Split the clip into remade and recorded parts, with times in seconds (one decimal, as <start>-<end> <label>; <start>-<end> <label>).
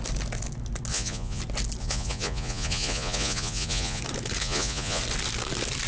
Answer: 0.0-0.9 recorded; 0.9-1.4 remade; 1.4-1.8 recorded; 1.8-4.0 remade; 4.0-4.4 recorded; 4.4-5.0 remade; 5.0-5.9 recorded